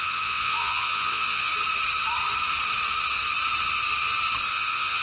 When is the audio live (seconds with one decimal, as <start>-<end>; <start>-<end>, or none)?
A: 1.5-4.5